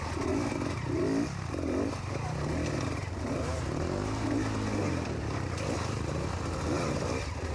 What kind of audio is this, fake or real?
real